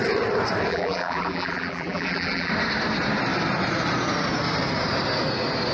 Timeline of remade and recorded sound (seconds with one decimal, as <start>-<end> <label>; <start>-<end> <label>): 0.0-0.7 recorded; 0.7-2.5 remade; 2.5-5.7 recorded